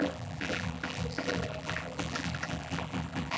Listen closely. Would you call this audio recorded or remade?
remade